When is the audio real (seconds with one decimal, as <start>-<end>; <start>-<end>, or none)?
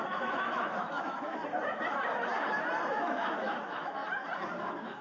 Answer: 1.4-2.9; 4.0-4.6